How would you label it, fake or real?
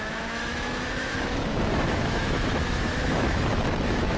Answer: fake